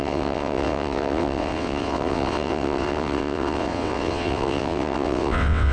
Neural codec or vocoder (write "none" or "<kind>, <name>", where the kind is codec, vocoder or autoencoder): vocoder, WaveNeXt